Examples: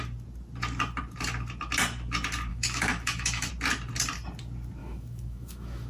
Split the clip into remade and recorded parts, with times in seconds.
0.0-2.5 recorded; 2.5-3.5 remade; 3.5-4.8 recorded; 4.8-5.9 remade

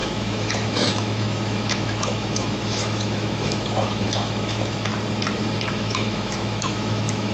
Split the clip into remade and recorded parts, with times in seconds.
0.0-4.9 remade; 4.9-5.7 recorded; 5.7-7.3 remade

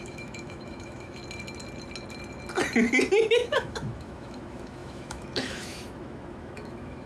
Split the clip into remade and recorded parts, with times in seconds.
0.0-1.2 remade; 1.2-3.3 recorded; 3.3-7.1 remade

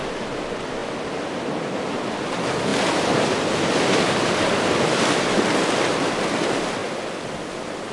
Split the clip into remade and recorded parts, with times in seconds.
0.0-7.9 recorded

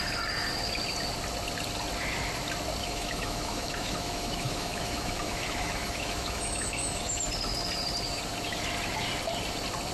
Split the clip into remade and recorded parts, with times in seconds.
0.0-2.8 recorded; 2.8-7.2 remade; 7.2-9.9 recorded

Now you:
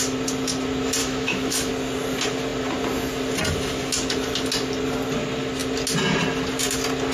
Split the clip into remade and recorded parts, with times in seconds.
0.0-1.0 recorded; 1.0-1.7 remade; 1.7-7.1 recorded

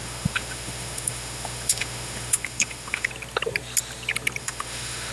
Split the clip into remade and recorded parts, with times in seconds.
0.0-3.1 remade; 3.1-4.4 recorded; 4.4-5.1 remade

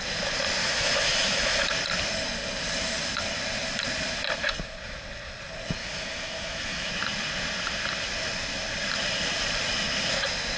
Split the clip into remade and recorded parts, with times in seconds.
0.0-0.6 recorded; 0.6-1.7 remade; 1.7-5.8 recorded; 5.8-6.9 remade; 6.9-10.6 recorded